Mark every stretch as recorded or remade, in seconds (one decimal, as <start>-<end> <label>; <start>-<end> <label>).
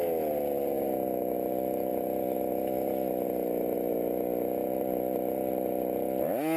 0.0-1.9 recorded; 1.9-3.9 remade; 3.9-6.6 recorded